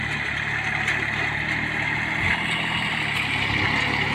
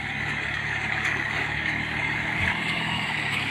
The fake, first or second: second